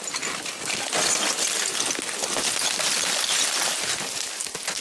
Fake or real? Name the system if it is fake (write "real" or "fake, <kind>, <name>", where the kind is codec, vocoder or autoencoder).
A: real